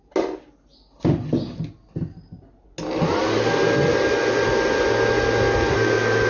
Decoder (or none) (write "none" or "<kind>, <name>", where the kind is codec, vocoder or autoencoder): none